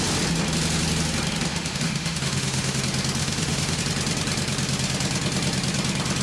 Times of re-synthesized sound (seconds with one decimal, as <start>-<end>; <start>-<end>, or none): 1.5-2.8; 3.2-3.8